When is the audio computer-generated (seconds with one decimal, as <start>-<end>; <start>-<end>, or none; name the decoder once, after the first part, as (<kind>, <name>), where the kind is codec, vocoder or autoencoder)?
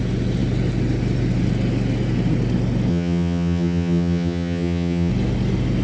2.9-5.1 (vocoder, HiFi-GAN)